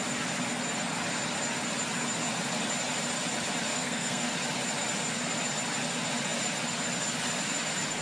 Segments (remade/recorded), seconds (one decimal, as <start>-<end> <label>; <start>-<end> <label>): 0.0-3.7 recorded; 3.7-4.3 remade; 4.3-8.0 recorded